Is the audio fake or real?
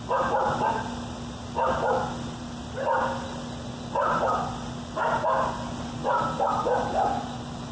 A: real